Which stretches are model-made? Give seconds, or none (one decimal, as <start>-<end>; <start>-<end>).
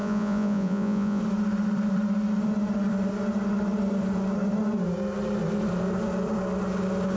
0.0-1.2